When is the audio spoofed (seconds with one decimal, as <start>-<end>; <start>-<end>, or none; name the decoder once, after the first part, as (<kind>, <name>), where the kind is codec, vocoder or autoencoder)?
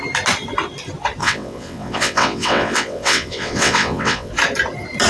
1.2-4.3 (vocoder, WaveNeXt)